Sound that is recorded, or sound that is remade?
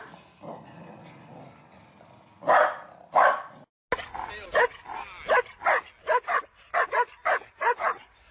recorded